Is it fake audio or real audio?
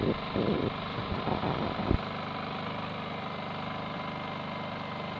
real